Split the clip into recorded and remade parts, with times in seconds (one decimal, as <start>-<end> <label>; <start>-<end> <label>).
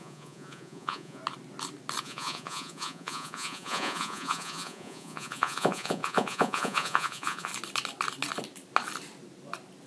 0.0-1.2 remade; 1.2-2.0 recorded; 2.0-7.5 remade; 7.5-9.9 recorded